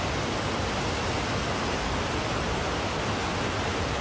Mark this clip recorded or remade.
recorded